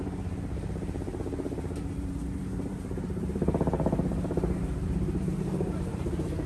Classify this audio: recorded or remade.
remade